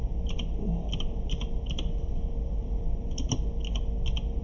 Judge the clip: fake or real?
real